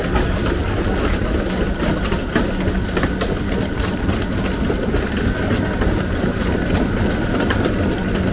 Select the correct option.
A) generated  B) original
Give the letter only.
B